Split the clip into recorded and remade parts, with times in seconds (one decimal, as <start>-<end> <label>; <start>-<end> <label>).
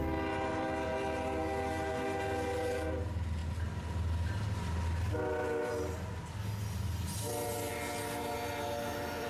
0.0-9.3 recorded